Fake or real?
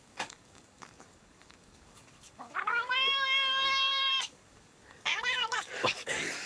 fake